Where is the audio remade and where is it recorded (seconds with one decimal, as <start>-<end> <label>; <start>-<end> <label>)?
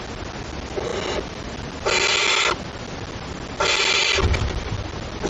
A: 0.0-5.3 recorded